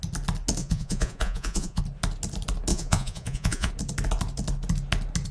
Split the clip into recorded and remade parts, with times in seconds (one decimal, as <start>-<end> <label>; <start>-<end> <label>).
0.0-0.6 recorded; 0.6-1.8 remade; 1.8-2.7 recorded; 2.7-3.7 remade; 3.7-5.3 recorded